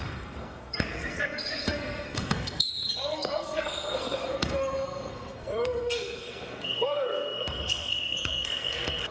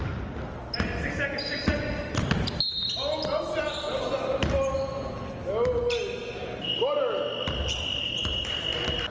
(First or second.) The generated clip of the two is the first